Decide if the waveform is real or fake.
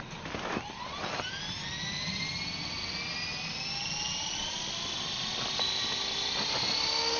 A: real